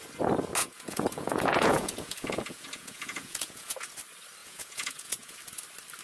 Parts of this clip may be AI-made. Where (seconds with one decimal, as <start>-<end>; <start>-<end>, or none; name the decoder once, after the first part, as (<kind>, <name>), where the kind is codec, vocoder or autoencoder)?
0.6-3.9 (vocoder, Vocos); 4.4-5.4